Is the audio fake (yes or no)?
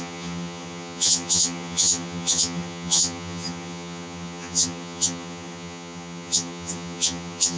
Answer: yes